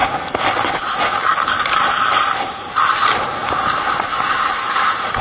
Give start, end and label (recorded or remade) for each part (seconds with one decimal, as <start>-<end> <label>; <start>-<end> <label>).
0.0-5.2 recorded